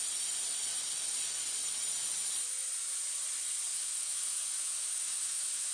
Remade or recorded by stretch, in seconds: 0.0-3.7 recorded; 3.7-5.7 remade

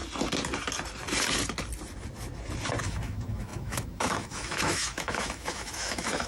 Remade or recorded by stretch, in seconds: 0.0-2.8 recorded; 2.8-6.3 remade